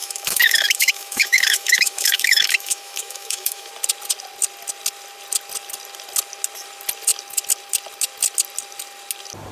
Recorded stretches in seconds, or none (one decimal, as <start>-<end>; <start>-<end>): 3.7-9.5